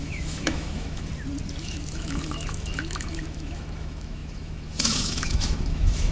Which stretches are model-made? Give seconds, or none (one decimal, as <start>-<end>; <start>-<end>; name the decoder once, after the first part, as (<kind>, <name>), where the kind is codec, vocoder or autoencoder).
0.0-1.1 (autoencoder, DAC-VAE); 1.6-6.1